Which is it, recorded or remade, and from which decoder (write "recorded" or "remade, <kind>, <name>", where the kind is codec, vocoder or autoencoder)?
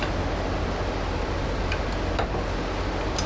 recorded